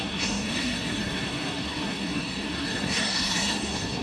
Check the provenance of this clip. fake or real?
fake